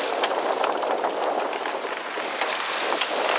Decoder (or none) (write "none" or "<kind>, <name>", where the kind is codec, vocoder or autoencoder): none